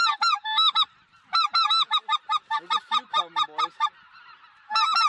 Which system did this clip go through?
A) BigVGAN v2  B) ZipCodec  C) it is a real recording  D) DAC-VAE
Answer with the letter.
C